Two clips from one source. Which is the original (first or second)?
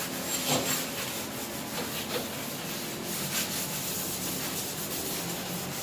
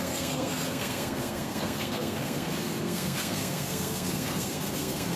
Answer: first